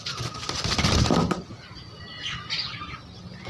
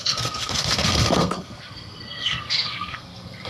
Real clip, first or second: first